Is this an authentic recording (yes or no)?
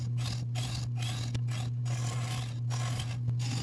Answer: yes